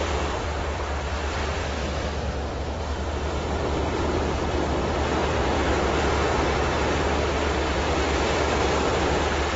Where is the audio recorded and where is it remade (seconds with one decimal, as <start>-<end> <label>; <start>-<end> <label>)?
0.0-1.8 remade; 1.8-2.4 recorded; 2.4-5.2 remade; 5.2-7.9 recorded; 7.9-9.6 remade